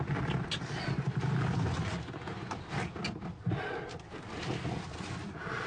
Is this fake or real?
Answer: real